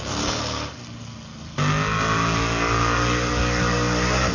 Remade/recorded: recorded